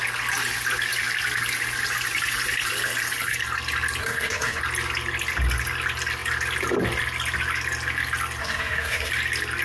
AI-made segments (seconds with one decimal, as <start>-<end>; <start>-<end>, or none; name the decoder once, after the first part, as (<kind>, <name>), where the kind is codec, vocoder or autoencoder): 4.0-4.6 (codec, SNAC); 8.4-9.1